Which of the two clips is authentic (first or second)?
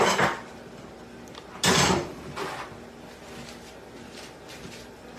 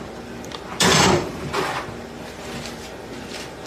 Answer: first